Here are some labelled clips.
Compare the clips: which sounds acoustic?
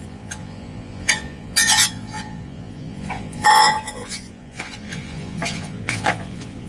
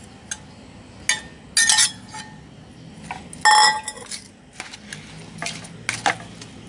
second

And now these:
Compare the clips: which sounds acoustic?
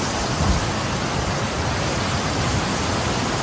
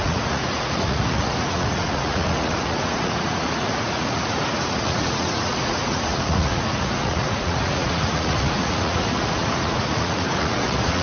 first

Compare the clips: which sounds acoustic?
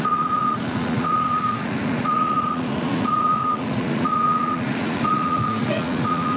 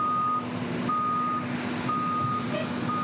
second